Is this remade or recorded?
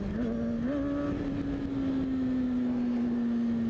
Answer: recorded